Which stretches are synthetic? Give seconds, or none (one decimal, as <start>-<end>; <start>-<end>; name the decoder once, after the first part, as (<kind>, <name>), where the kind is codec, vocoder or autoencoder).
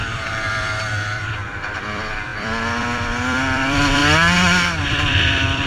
0.0-4.0 (vocoder, BigVGAN v2); 4.8-5.7